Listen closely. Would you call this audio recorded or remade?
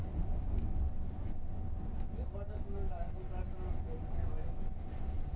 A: recorded